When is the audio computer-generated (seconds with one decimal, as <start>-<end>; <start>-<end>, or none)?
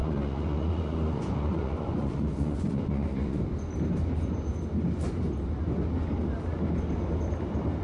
0.0-3.4